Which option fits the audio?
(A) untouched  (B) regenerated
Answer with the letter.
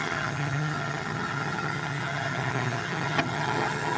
B